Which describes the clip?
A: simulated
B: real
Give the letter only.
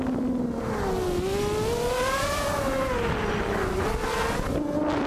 B